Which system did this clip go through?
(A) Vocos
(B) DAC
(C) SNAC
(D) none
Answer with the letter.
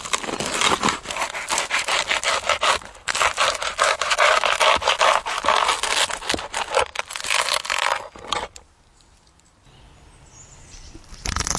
D